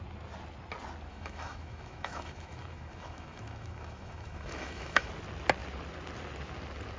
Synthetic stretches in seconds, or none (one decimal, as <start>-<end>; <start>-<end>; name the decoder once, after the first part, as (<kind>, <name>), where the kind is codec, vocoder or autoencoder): 1.1-5.1 (autoencoder, DAC-VAE)

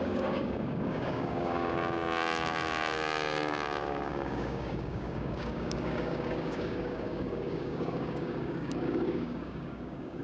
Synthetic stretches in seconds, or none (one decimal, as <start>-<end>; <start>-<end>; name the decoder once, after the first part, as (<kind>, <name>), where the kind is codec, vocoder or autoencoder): 0.0-10.2 (codec, DAC)

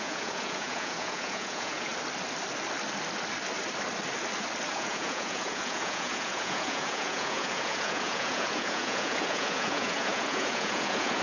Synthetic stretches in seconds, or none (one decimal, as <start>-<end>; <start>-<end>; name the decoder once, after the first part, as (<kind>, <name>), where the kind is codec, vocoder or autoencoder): 0.0-1.9 (vocoder, Vocos); 4.7-11.2

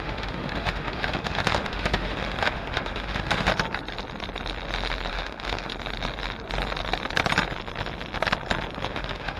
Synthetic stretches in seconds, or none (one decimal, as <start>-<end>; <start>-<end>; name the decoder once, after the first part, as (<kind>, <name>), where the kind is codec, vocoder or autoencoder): 0.0-3.5 (autoencoder, DAC-VAE); 5.1-5.7; 8.9-9.4